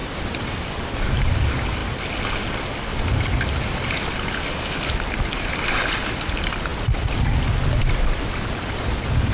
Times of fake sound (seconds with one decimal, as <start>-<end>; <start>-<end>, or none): 0.0-1.4